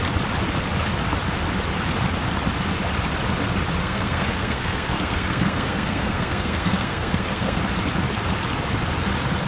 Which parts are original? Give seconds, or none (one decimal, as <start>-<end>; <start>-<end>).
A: 0.0-3.8; 7.6-9.5